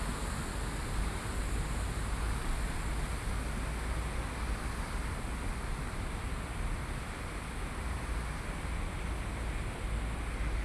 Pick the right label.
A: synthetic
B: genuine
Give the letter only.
B